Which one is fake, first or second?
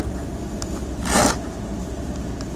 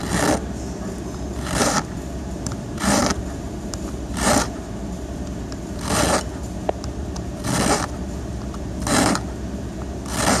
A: second